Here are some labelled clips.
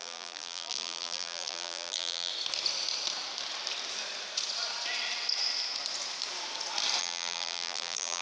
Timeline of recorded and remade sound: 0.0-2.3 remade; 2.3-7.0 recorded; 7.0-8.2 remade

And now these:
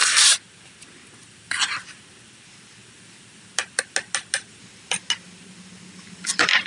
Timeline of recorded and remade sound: 0.0-2.1 recorded; 2.1-2.8 remade; 2.8-6.3 recorded; 6.3-6.7 remade

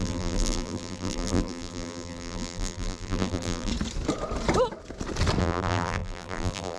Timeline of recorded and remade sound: 0.0-3.7 remade; 3.7-5.4 recorded; 5.4-6.8 remade